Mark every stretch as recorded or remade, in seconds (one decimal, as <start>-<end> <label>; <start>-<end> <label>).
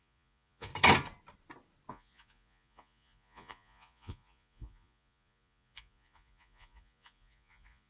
0.0-0.7 remade; 0.7-1.9 recorded; 1.9-7.9 remade